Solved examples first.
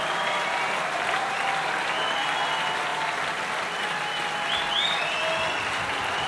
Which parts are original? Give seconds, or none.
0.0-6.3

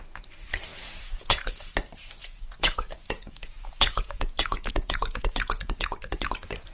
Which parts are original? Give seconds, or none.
0.0-0.7; 1.7-2.2; 6.2-6.7

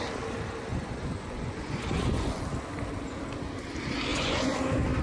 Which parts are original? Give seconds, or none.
0.0-0.7; 2.4-4.1; 4.6-5.0

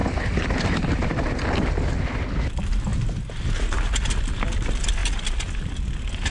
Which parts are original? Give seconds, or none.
0.0-6.3

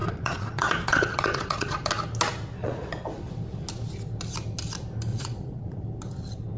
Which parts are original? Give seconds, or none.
1.9-2.6; 3.3-5.1; 5.8-6.6

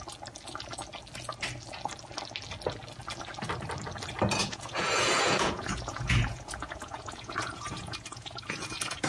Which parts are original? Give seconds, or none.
0.0-4.4